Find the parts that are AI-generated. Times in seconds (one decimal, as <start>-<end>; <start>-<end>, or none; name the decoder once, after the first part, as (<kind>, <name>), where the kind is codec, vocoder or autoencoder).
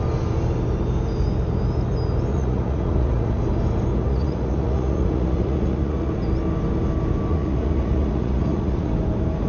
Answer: 2.3-3.4 (vocoder, Vocos); 3.9-6.1; 7.3-8.9